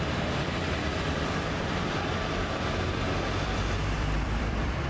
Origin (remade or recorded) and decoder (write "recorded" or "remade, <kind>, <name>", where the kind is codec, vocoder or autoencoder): remade, vocoder, BigVGAN v2